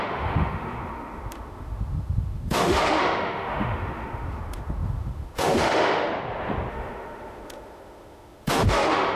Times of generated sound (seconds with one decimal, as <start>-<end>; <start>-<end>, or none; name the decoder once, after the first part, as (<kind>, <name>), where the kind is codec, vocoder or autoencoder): 0.0-6.1 (autoencoder, DAC-VAE); 6.7-9.2